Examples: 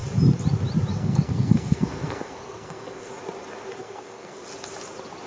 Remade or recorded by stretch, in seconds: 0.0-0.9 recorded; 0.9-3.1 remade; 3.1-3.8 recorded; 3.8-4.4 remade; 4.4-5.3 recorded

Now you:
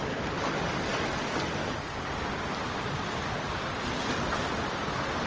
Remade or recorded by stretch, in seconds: 0.0-5.3 recorded

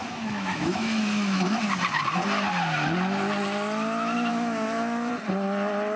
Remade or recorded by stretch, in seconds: 0.0-1.6 remade; 1.6-4.3 recorded; 4.3-5.1 remade; 5.1-6.0 recorded